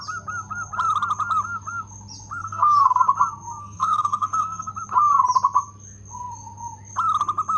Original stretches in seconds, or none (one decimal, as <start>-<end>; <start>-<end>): 0.0-2.4; 3.0-3.6; 4.7-7.6